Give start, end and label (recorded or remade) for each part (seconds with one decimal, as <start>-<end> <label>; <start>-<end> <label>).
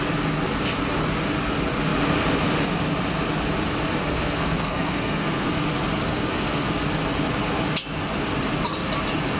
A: 0.0-4.0 recorded; 4.0-5.5 remade; 5.5-6.1 recorded; 6.1-6.7 remade; 6.7-9.4 recorded